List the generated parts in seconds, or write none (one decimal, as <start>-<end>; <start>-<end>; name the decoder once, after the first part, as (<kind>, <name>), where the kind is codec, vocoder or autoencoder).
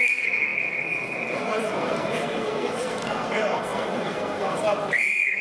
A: 0.0-5.4 (codec, SNAC)